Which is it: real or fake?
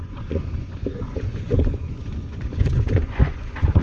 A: fake